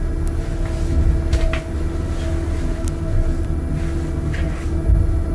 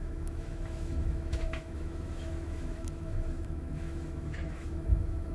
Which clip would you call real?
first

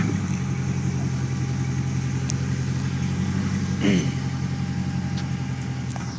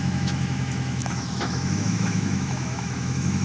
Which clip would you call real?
first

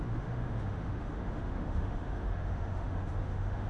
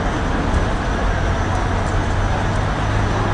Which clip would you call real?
second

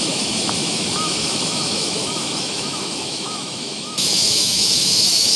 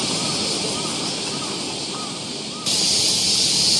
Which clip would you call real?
second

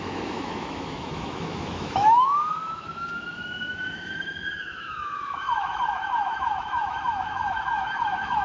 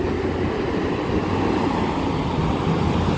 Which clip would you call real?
second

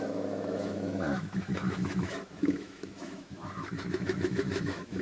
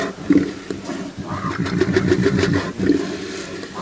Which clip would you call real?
second